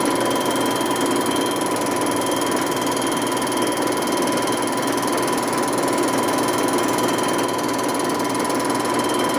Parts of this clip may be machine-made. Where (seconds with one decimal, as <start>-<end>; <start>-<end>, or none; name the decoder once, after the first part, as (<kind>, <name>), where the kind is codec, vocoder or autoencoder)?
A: none